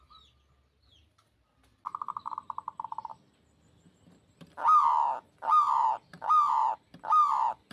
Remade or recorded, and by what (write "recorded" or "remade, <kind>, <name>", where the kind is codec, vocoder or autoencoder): recorded